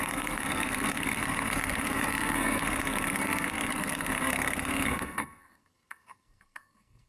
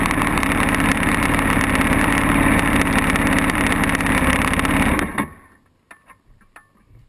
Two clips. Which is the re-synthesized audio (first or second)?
first